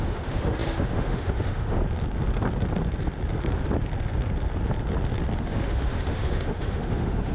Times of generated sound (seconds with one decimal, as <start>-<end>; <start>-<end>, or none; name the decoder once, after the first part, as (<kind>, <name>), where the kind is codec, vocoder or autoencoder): 0.0-1.8 (autoencoder, DAC-VAE); 5.4-7.3